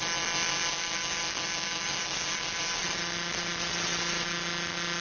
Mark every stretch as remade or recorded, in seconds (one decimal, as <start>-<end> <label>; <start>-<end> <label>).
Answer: 0.0-0.7 recorded; 0.7-2.8 remade; 2.8-5.0 recorded